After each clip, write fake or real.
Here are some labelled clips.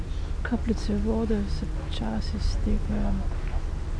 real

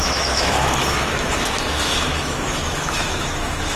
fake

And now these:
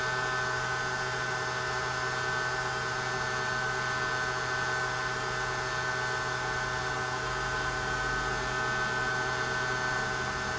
real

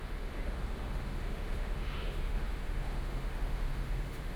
fake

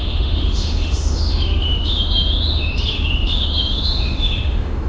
fake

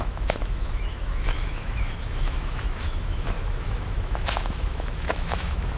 fake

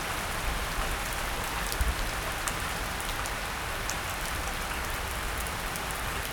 real